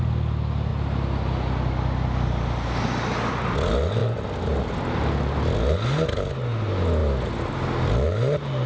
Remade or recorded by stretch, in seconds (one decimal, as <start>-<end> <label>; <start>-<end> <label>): 0.0-8.7 recorded